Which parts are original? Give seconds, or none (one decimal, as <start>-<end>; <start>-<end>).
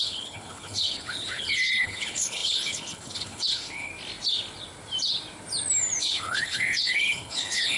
3.9-6.0